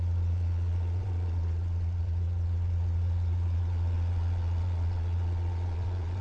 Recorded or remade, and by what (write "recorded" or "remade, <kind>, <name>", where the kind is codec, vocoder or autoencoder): remade, vocoder, Vocos